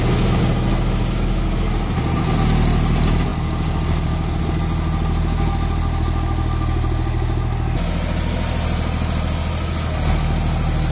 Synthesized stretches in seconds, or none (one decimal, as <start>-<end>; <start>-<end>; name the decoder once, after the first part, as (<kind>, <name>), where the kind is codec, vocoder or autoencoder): none